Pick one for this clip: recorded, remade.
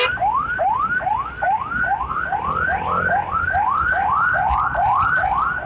recorded